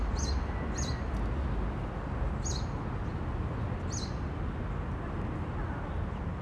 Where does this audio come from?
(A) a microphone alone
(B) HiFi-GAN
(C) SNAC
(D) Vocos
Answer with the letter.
A